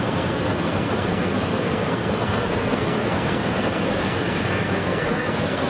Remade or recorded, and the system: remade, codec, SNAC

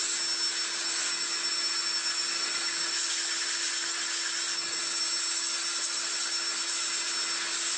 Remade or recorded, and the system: recorded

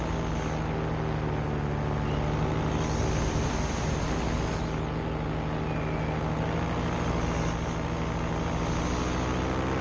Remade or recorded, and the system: recorded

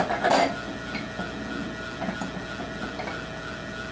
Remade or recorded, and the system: recorded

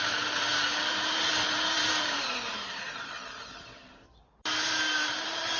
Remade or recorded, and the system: remade, vocoder, BigVGAN v2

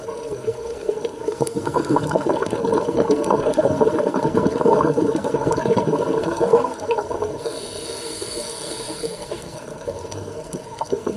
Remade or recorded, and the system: remade, codec, SNAC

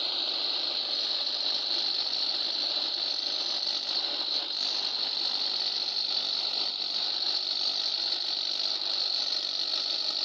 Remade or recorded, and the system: recorded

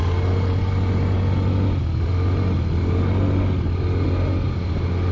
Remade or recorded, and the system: recorded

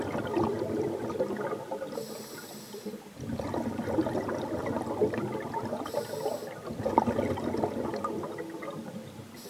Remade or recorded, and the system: recorded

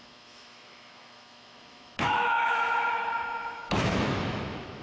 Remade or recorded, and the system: remade, autoencoder, DAC-VAE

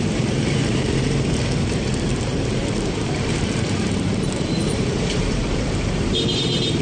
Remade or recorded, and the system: remade, vocoder, BigVGAN v2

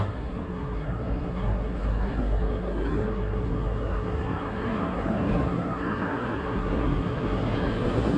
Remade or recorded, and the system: remade, codec, SNAC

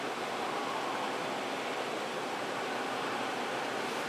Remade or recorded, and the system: recorded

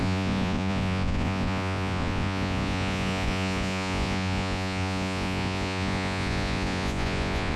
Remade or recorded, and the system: remade, vocoder, Vocos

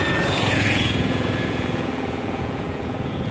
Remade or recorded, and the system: remade, vocoder, Vocos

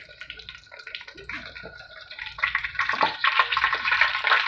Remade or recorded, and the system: remade, vocoder, BigVGAN v2